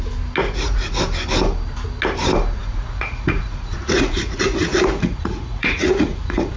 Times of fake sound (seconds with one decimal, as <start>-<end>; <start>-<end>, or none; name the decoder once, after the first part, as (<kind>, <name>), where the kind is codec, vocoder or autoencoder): 0.4-1.0 (vocoder, Vocos); 2.6-6.6